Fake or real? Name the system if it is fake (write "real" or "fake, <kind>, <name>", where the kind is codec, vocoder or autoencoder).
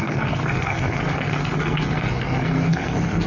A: fake, codec, SNAC